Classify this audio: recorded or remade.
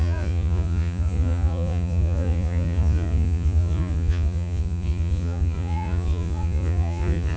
remade